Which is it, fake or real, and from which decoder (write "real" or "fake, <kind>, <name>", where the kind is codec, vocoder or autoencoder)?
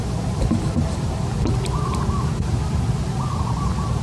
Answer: fake, vocoder, BigVGAN v2